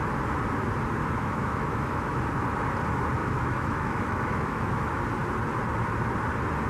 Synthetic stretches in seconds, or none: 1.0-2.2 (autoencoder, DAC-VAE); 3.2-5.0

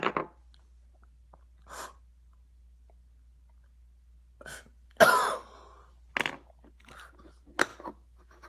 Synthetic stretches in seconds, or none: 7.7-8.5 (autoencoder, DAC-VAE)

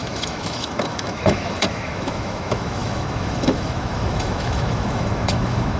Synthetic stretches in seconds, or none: 0.0-5.8 (autoencoder, DAC-VAE)